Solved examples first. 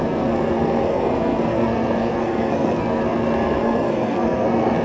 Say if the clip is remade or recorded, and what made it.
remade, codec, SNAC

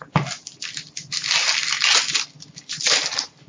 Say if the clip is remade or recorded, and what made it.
recorded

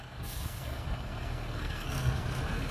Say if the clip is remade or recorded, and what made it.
remade, codec, SNAC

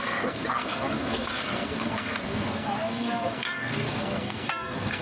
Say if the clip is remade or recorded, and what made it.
remade, codec, SNAC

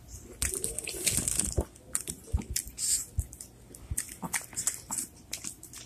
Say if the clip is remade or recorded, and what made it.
recorded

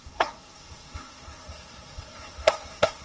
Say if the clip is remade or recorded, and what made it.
remade, codec, SNAC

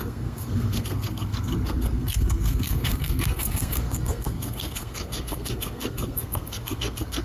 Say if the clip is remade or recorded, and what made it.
remade, codec, SNAC